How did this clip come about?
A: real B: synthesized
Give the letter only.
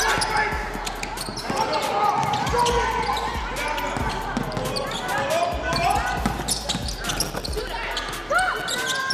A